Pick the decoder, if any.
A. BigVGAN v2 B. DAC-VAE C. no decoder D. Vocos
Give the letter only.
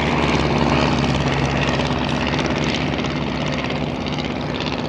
C